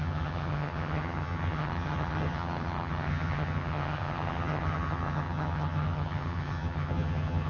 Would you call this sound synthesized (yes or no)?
yes